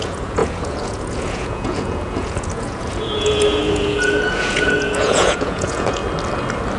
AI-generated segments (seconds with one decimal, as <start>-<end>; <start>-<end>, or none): 0.0-6.0

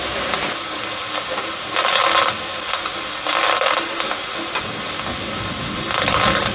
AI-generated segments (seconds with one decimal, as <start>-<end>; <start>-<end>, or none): none

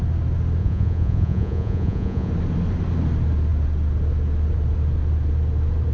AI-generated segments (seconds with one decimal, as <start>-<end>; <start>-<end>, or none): 0.6-2.3

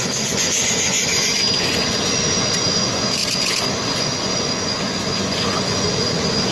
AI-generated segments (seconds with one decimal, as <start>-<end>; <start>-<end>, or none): 0.0-6.5

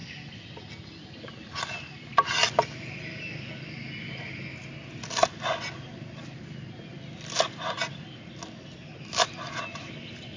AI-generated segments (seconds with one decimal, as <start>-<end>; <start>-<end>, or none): none

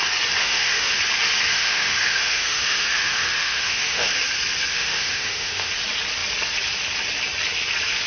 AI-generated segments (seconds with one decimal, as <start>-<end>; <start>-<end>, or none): 0.4-1.0; 1.5-4.1; 4.7-5.7

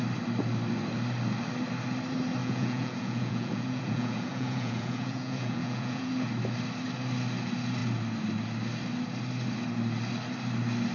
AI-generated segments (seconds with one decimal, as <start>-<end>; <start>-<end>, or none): 2.4-6.1